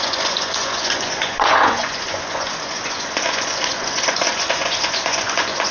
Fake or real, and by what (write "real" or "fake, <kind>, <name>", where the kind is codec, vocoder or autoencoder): fake, vocoder, Vocos